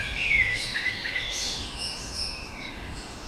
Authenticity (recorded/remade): remade